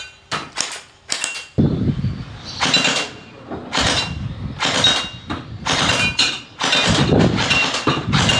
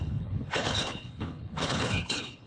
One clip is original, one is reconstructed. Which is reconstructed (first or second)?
second